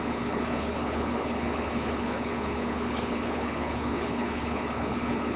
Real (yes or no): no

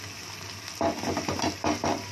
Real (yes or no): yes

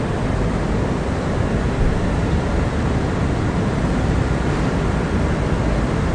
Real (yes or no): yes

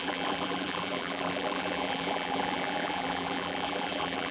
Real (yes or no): no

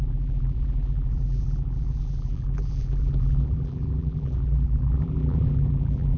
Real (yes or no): no